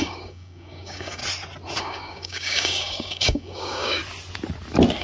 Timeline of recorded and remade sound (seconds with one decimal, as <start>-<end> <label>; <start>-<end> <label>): 0.0-1.2 remade; 1.2-1.8 recorded; 1.8-4.0 remade; 4.0-5.0 recorded

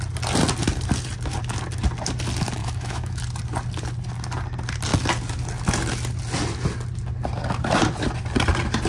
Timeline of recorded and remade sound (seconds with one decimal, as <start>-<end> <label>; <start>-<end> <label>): 0.0-2.6 recorded; 2.6-3.2 remade; 3.2-8.9 recorded

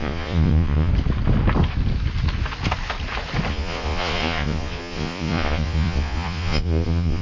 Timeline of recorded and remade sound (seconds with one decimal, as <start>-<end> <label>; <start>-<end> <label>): 0.0-0.9 remade; 0.9-3.5 recorded; 3.5-7.2 remade

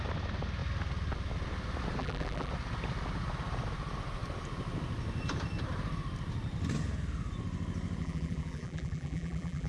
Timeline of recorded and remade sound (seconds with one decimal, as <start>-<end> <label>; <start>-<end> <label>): 0.0-2.0 recorded; 2.0-2.5 remade; 2.5-8.0 recorded; 8.0-9.7 remade

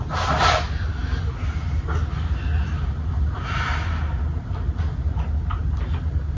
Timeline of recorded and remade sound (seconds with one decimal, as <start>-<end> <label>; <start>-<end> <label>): 0.0-6.4 recorded

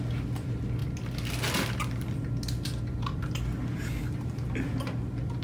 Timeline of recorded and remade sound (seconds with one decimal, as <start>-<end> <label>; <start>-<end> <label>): 0.0-5.4 recorded